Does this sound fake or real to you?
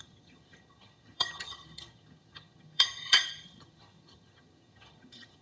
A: fake